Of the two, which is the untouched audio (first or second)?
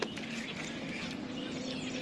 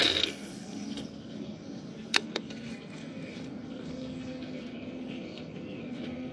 first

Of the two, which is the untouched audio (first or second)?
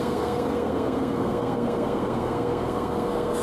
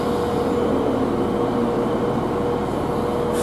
second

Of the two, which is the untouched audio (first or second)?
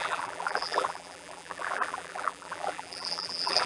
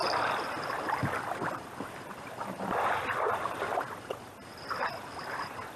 second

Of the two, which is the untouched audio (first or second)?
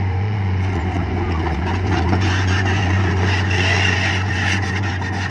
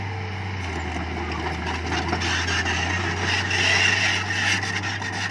second